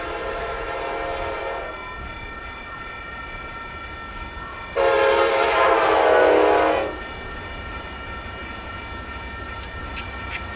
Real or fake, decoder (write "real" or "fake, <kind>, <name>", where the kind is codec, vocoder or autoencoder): real